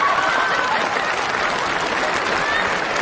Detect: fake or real real